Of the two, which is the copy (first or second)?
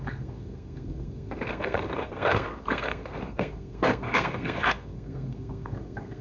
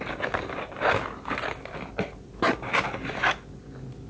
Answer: first